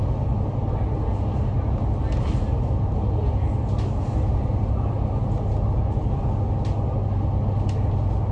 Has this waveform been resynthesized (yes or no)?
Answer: no